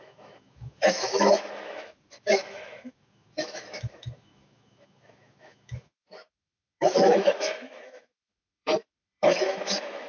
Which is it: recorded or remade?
remade